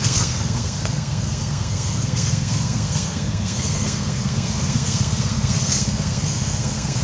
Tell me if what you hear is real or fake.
fake